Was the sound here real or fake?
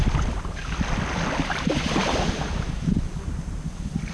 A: real